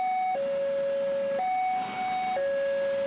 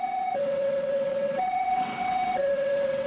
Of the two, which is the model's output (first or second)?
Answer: second